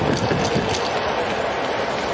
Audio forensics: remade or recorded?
recorded